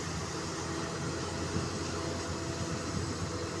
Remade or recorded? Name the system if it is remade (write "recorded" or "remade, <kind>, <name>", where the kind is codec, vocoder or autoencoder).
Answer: recorded